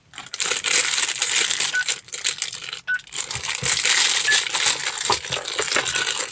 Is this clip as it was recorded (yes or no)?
yes